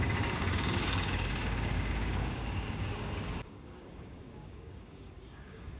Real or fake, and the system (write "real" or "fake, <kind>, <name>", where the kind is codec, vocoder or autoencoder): fake, codec, DAC